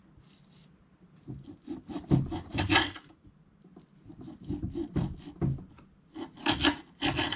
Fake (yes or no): no